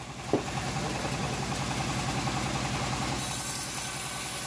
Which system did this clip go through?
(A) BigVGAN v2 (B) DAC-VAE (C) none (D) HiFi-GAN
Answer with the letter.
C